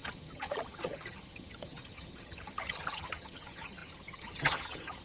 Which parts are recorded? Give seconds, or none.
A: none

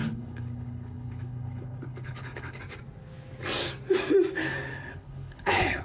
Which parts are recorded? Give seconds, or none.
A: 2.6-4.7

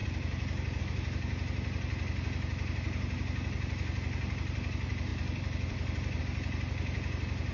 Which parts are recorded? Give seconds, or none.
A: 0.8-5.1; 6.2-7.5

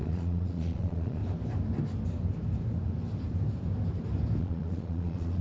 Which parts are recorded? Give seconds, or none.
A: 1.2-4.4

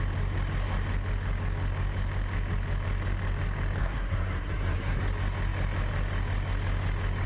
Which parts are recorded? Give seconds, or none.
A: 0.0-3.8; 5.0-7.3

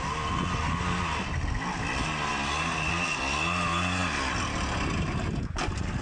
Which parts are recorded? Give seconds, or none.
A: 0.0-6.0